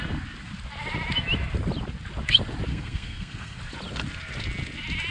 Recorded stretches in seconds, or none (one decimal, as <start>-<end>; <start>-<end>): 0.0-2.7; 3.6-5.1